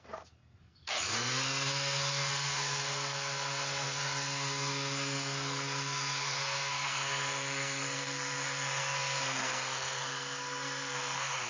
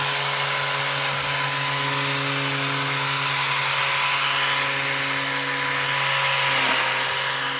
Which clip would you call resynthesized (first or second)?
first